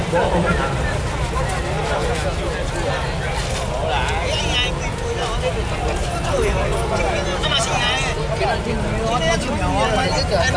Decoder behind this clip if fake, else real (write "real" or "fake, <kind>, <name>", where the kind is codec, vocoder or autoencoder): real